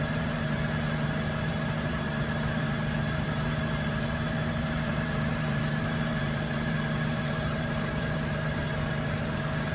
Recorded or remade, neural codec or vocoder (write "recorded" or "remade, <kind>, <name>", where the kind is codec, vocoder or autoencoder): remade, vocoder, BigVGAN v2